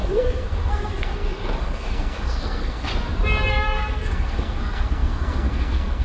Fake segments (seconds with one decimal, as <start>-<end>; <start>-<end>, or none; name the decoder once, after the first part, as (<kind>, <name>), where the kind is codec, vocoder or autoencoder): 0.0-2.9 (codec, SNAC); 3.5-6.0